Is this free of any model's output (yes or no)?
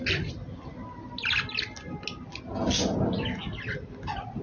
yes